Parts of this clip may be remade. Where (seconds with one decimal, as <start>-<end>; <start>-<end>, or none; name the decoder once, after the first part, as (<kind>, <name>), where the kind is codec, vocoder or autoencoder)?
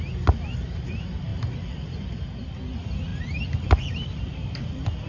1.3-2.1 (vocoder, BigVGAN v2); 3.1-5.1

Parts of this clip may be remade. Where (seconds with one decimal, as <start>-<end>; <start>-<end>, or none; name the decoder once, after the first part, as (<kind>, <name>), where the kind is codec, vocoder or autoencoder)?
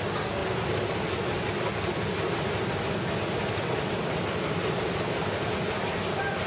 none